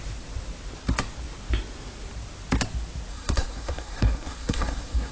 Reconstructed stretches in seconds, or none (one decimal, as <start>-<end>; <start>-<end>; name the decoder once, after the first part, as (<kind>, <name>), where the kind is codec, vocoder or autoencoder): 3.1-5.1 (codec, SNAC)